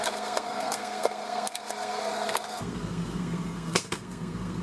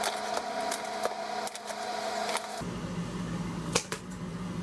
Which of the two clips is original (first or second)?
second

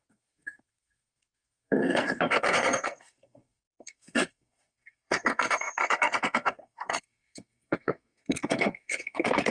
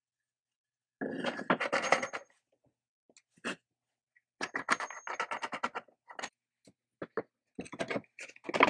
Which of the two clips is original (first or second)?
second